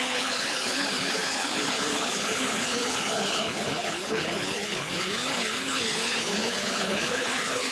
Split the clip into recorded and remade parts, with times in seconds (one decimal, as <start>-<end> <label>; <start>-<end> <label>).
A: 0.0-7.7 remade